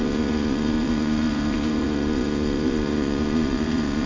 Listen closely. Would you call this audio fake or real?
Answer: fake